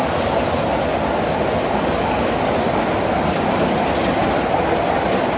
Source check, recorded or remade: recorded